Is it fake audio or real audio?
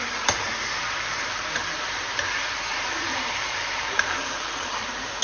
fake